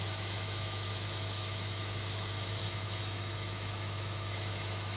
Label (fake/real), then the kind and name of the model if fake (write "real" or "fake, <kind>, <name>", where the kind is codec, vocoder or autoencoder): fake, autoencoder, DAC-VAE